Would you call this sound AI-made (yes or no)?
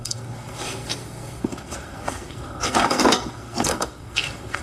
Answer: yes